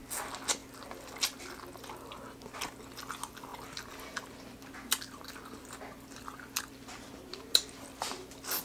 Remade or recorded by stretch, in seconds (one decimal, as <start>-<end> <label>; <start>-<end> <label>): 0.0-8.6 recorded